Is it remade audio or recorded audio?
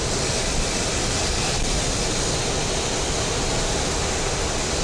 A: recorded